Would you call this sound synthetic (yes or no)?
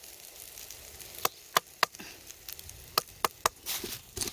no